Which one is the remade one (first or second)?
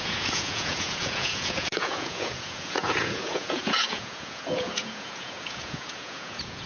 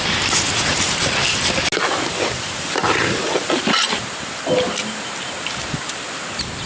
first